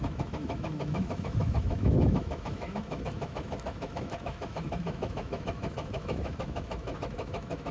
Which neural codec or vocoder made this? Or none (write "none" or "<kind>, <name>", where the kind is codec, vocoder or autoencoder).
autoencoder, DAC-VAE